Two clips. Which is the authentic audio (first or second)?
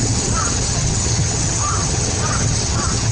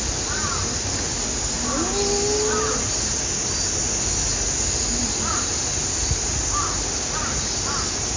second